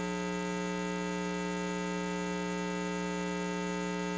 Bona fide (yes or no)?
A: yes